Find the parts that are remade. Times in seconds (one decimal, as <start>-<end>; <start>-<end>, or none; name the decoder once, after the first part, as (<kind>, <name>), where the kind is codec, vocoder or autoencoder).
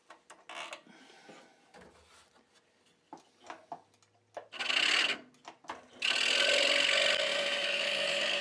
none